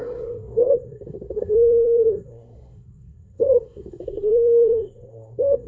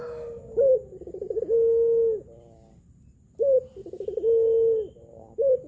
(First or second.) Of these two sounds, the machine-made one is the first